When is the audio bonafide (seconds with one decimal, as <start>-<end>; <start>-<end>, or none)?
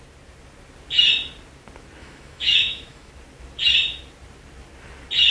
0.0-2.0; 3.1-5.3